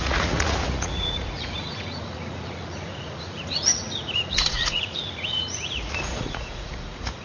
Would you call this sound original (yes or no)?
no